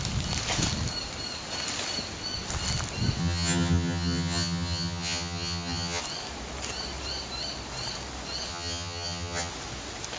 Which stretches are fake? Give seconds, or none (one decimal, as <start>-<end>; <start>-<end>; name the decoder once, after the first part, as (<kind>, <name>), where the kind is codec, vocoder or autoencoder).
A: 3.2-6.0 (vocoder, HiFi-GAN); 8.5-9.5